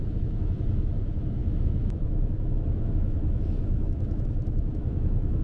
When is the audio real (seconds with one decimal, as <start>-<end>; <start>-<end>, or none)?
none